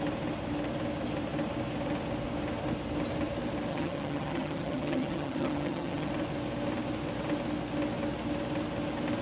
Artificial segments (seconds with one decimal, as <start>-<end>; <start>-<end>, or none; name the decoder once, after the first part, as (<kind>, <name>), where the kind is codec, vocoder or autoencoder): 3.7-6.1 (vocoder, HiFi-GAN)